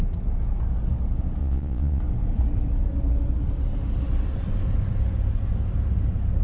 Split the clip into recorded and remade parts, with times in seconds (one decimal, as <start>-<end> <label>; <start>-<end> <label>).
0.0-1.4 recorded; 1.4-2.0 remade; 2.0-6.4 recorded